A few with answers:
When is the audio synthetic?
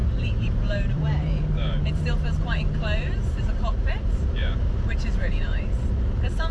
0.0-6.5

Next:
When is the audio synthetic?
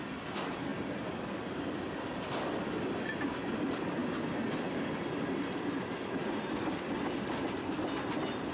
none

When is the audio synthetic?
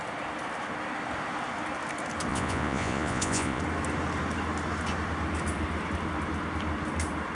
2.3-3.6